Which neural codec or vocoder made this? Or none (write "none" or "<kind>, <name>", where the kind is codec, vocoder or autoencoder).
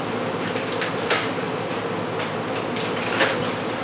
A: vocoder, BigVGAN v2